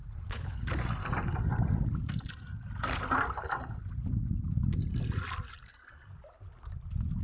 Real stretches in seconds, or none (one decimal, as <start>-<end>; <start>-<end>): 0.7-7.2